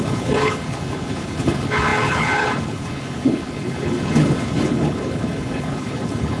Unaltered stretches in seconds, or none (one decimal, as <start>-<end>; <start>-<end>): none